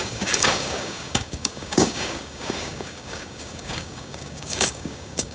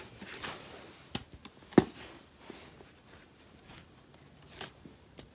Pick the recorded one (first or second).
second